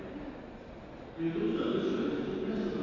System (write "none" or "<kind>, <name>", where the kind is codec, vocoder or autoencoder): none